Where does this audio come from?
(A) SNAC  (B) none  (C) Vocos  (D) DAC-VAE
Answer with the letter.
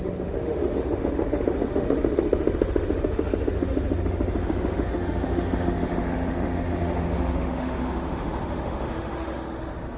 D